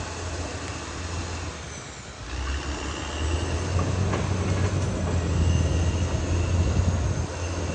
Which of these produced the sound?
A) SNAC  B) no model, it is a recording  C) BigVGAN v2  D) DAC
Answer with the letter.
B